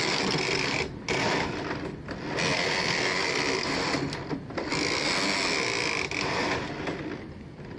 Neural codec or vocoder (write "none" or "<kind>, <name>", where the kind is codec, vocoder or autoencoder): none